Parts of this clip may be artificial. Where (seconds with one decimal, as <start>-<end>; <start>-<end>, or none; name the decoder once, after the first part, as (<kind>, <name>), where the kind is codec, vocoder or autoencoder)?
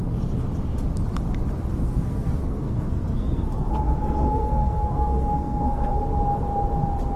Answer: 1.7-6.0 (codec, SNAC)